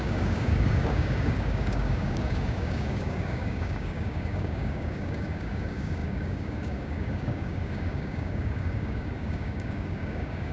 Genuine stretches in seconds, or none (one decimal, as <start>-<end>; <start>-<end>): none